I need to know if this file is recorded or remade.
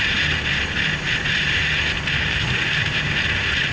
remade